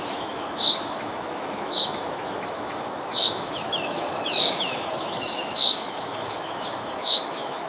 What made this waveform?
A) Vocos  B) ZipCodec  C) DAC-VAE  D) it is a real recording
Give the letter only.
C